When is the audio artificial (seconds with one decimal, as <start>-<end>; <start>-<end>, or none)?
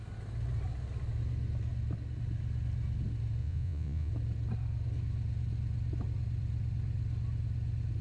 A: 3.4-4.1